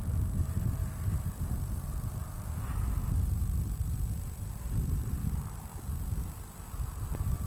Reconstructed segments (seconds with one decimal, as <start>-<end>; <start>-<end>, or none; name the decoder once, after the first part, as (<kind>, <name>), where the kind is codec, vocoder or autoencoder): none